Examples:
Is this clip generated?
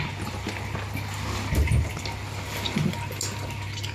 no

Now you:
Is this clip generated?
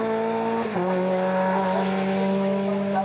no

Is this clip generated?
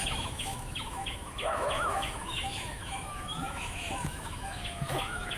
yes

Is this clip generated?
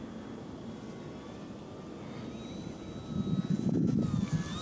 no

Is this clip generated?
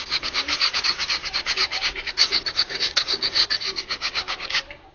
yes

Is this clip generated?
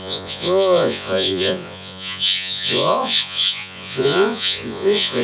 yes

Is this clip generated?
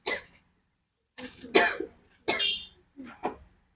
no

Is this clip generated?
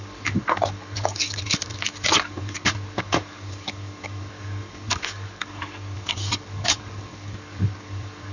yes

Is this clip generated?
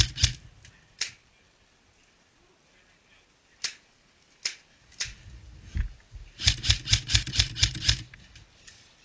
no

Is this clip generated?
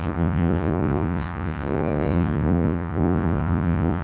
yes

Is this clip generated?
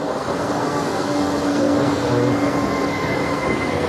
yes